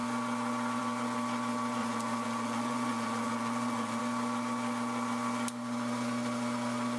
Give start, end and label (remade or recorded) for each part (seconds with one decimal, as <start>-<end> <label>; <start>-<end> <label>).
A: 0.0-1.8 recorded; 1.8-4.0 remade; 4.0-7.0 recorded